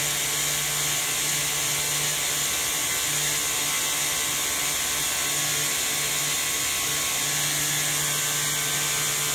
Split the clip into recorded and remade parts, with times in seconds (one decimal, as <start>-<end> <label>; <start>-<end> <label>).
0.0-9.3 recorded